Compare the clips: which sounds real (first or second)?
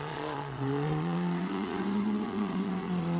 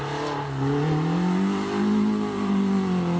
second